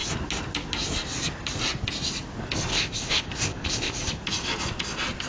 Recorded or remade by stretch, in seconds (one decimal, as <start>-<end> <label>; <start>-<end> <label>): 0.0-2.7 recorded; 2.7-4.0 remade; 4.0-5.3 recorded